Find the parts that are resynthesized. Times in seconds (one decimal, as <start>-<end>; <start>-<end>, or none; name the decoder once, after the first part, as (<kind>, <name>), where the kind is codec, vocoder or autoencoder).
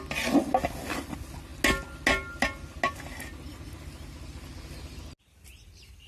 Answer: none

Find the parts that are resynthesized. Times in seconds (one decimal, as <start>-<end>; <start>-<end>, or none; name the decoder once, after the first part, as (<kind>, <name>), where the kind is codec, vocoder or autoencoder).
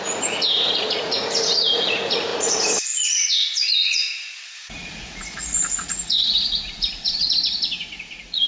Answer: 0.0-7.2 (vocoder, Vocos); 8.0-8.5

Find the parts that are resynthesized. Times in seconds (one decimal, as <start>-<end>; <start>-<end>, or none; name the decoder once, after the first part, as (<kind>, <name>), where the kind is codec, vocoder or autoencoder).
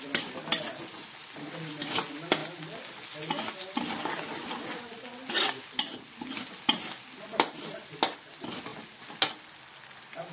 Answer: none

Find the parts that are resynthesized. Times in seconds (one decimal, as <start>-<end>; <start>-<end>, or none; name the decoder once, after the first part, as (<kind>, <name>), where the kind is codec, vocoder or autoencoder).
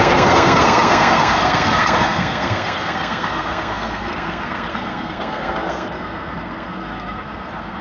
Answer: 0.0-7.8 (codec, SNAC)